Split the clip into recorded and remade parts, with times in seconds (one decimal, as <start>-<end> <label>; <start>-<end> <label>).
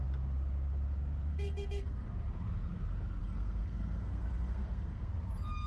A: 0.0-1.3 recorded; 1.3-2.1 remade; 2.1-3.2 recorded; 3.2-5.1 remade; 5.1-5.7 recorded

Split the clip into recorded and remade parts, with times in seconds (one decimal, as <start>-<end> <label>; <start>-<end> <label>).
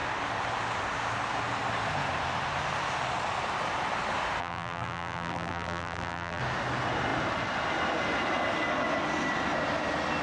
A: 0.0-4.4 recorded; 4.4-6.4 remade; 6.4-10.2 recorded